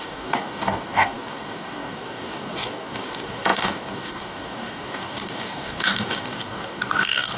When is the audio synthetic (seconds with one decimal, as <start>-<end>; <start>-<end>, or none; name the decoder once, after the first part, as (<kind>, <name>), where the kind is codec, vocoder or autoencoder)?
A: 0.0-7.4 (codec, DAC)